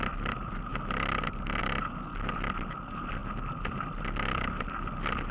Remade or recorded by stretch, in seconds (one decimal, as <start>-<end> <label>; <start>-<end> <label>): 0.0-5.3 recorded